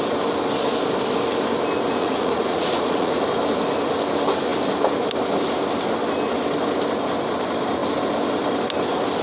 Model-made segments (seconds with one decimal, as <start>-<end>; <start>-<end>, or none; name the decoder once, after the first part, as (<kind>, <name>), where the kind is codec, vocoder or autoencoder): 2.0-3.2 (vocoder, Vocos)